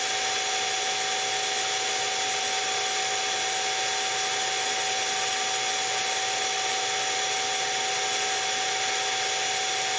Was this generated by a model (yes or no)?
no